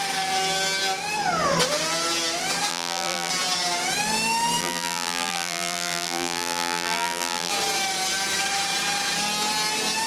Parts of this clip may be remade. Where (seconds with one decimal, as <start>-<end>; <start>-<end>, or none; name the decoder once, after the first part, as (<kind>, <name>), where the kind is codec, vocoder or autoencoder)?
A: 2.7-3.3 (vocoder, BigVGAN v2); 4.6-7.5